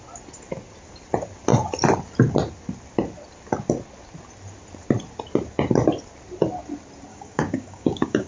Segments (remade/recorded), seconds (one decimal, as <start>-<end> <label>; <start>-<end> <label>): 0.0-7.1 recorded; 7.1-8.3 remade